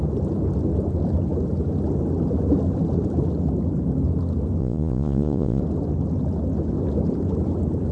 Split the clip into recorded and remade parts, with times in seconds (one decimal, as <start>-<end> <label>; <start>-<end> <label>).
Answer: 0.0-4.6 recorded; 4.6-5.6 remade; 5.6-7.9 recorded